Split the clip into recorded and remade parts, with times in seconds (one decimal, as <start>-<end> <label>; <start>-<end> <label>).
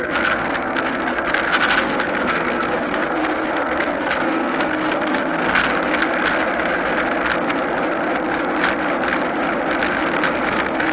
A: 0.0-5.6 remade; 5.6-10.5 recorded; 10.5-10.9 remade